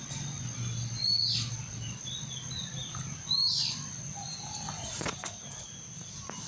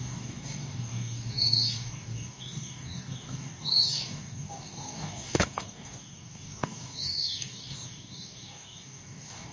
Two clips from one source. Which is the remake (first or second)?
second